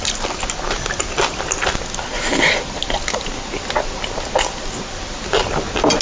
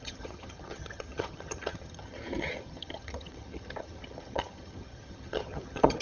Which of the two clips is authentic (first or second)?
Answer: first